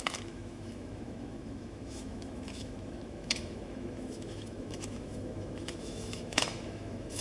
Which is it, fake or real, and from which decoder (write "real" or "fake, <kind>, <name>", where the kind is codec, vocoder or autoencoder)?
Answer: fake, autoencoder, DAC-VAE